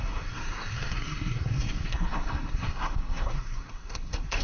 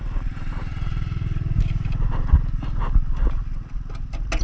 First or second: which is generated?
first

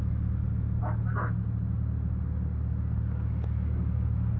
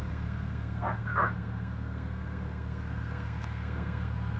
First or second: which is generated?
second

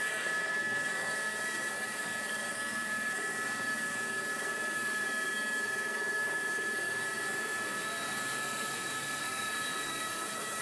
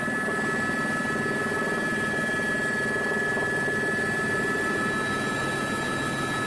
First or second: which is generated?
first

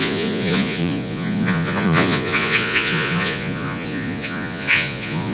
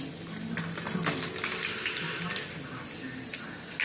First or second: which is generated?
first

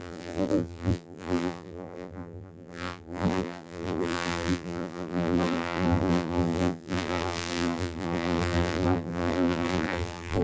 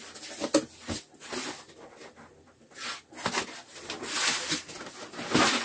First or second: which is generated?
first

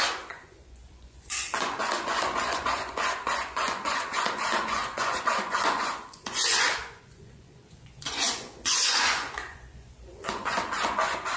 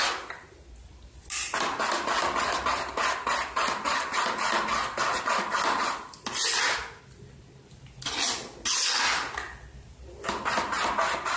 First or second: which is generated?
first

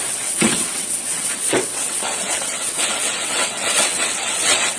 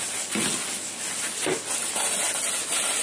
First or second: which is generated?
first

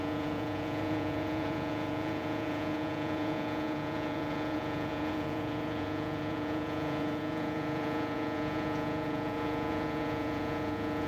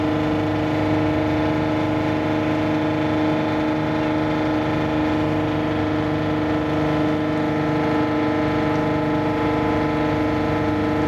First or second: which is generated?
first